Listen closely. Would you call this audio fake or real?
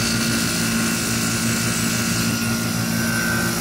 real